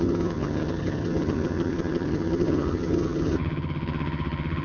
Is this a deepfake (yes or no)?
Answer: yes